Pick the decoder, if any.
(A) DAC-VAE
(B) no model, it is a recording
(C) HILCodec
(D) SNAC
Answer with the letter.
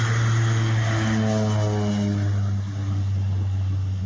B